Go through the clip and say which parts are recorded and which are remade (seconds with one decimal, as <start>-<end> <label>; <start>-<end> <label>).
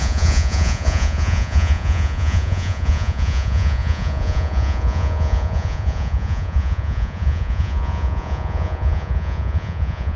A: 0.0-10.2 remade